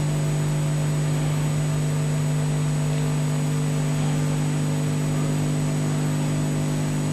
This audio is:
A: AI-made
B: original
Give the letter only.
B